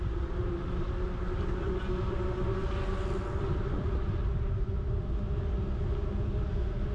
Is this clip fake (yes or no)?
no